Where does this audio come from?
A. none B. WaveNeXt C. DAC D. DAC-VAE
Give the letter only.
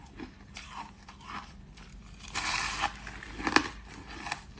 A